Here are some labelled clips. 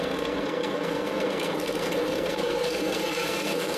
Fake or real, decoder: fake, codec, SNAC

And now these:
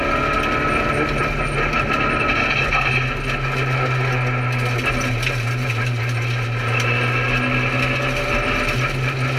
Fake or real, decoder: real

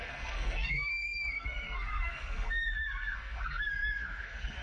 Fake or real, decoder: fake, codec, SNAC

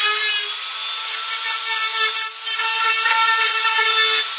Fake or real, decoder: real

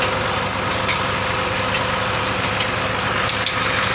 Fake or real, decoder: real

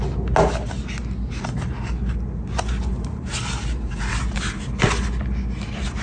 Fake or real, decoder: real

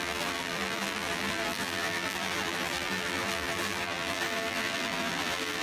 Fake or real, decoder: fake, vocoder, BigVGAN v2